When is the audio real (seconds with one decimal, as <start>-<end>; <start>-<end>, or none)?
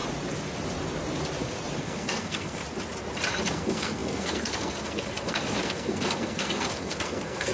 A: 0.0-1.8; 2.6-3.5